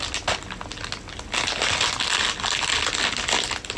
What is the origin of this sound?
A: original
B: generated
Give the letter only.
A